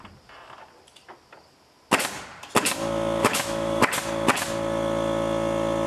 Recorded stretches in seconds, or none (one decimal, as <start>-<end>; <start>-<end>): 0.0-3.2; 3.8-5.9